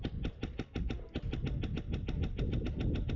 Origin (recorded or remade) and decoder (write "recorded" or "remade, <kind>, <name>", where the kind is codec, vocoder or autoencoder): recorded